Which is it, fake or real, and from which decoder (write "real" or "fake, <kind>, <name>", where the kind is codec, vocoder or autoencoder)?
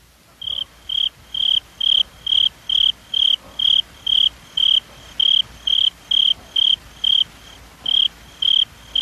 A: real